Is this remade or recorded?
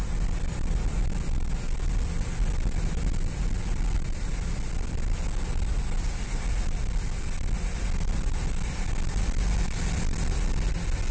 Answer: recorded